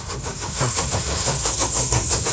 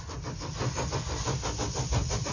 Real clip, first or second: second